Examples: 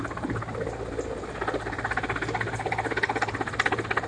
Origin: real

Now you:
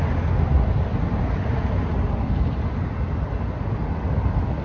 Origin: real